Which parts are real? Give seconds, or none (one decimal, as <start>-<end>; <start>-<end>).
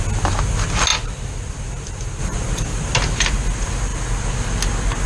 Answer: 0.0-5.1